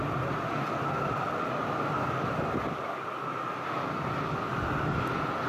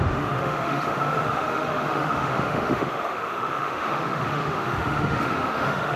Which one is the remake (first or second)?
second